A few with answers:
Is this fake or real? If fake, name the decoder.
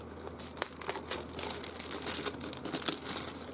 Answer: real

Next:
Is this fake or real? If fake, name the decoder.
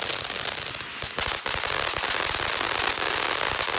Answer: real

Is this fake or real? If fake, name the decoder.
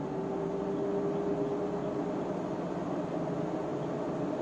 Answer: real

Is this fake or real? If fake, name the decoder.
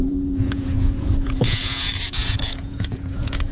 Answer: fake, vocoder, Vocos